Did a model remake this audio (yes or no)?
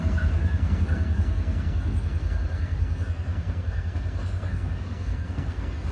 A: yes